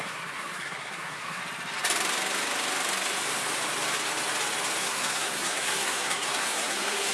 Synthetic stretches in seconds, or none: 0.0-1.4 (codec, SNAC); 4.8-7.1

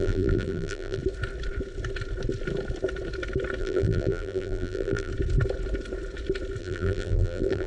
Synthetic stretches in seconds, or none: 0.0-1.0 (vocoder, BigVGAN v2); 3.6-5.1; 6.6-7.7

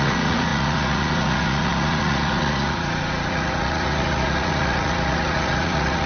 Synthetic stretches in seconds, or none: 0.0-6.1 (vocoder, Vocos)

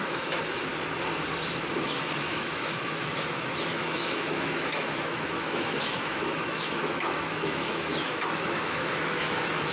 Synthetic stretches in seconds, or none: 0.0-0.7 (autoencoder, DAC-VAE); 1.7-9.7

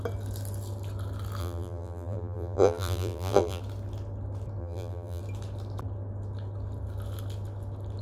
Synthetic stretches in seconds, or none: 1.4-3.6 (vocoder, BigVGAN v2); 4.6-5.2

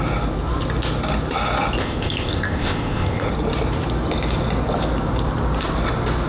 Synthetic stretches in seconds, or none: 1.8-3.3 (codec, ZipCodec)

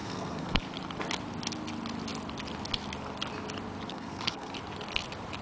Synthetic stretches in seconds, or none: 0.0-0.6 (codec, SNAC); 3.9-4.5

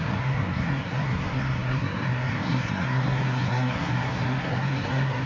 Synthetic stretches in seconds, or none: 0.0-5.3 (codec, SNAC)